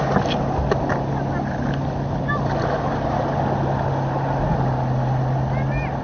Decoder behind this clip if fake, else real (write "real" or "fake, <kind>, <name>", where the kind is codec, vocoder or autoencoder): real